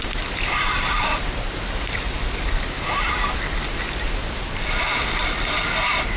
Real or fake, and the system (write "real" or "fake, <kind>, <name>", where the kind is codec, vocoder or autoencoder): real